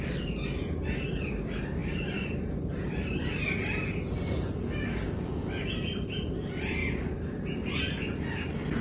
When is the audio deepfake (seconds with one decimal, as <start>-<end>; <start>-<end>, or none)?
none